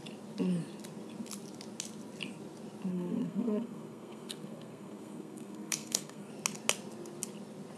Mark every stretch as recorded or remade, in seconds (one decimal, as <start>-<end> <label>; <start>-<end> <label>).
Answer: 0.0-2.9 recorded; 2.9-6.3 remade; 6.3-7.8 recorded